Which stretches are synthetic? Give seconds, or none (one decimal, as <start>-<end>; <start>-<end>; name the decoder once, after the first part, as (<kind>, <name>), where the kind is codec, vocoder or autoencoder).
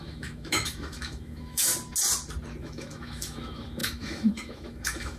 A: 0.0-1.7 (autoencoder, DAC-VAE); 2.6-5.2